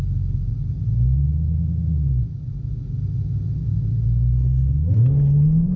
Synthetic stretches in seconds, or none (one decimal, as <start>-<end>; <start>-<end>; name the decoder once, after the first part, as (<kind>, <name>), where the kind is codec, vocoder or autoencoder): none